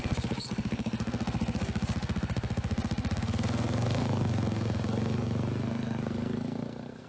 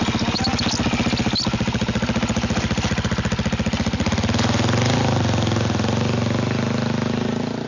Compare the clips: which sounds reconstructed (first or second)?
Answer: first